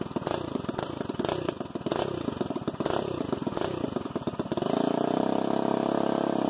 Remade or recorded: recorded